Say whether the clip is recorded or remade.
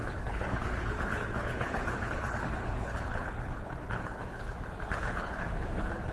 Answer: remade